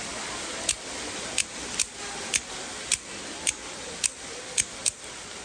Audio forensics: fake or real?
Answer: real